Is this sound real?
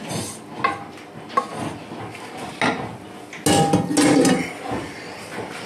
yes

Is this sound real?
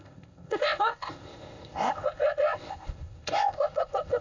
no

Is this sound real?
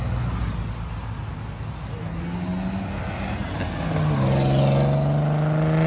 yes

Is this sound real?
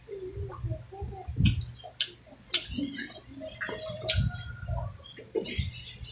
yes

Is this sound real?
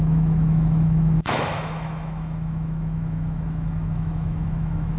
no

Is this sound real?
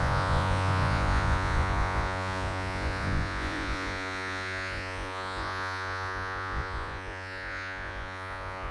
no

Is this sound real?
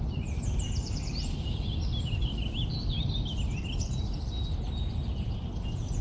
yes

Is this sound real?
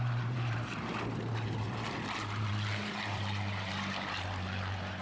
no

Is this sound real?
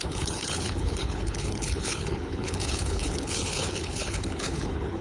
no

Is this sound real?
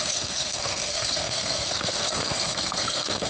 no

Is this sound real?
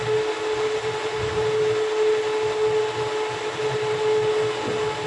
yes